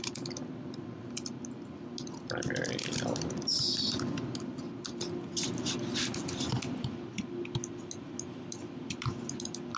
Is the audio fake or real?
real